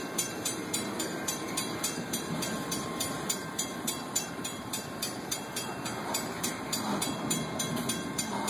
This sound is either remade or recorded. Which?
remade